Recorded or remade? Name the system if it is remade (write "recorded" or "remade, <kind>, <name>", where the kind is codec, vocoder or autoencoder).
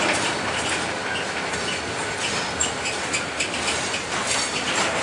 recorded